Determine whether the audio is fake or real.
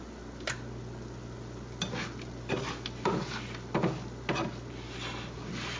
real